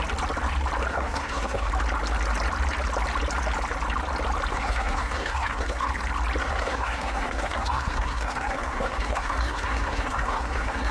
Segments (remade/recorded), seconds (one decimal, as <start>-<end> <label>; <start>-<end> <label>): 0.0-0.9 recorded; 0.9-1.7 remade; 1.7-4.5 recorded; 4.5-5.9 remade; 5.9-6.4 recorded; 6.4-10.9 remade